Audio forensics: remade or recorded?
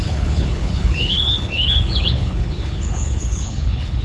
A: remade